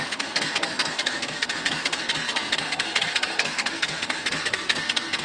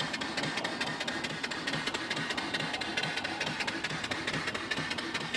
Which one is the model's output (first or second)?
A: first